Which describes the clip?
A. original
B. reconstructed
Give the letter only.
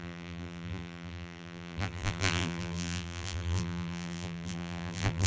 B